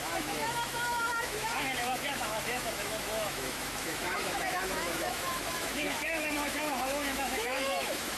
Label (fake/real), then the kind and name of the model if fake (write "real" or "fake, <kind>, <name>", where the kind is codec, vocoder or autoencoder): fake, autoencoder, DAC-VAE